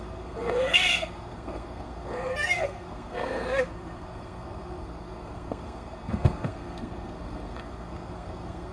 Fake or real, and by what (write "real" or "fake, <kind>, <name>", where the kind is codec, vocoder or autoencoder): fake, codec, SNAC